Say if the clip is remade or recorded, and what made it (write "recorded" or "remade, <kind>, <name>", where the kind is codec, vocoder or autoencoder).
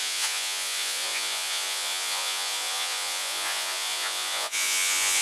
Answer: remade, vocoder, Vocos